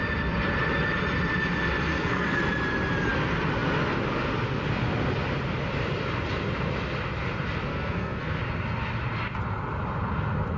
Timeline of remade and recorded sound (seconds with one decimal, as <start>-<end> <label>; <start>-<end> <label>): 0.0-1.9 recorded; 1.9-2.4 remade; 2.4-7.7 recorded; 7.7-8.4 remade; 8.4-10.6 recorded